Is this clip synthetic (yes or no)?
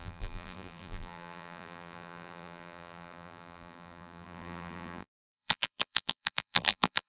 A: yes